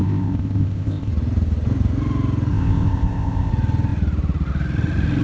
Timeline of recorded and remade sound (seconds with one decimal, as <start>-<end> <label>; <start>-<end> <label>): 0.0-1.1 remade; 1.1-2.5 recorded; 2.5-3.5 remade; 3.5-5.2 recorded

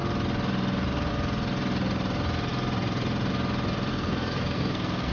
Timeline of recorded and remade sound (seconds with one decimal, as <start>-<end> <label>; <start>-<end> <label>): 0.0-3.9 recorded; 3.9-5.1 remade

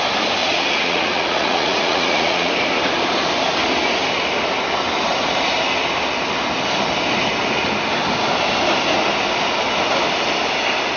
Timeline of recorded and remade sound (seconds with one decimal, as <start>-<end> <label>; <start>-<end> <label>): 0.0-0.4 recorded; 0.4-2.5 remade; 2.5-11.0 recorded